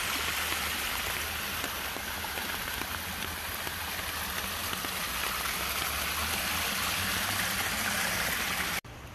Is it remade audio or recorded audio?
recorded